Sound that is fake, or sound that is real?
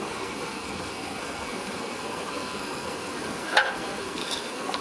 fake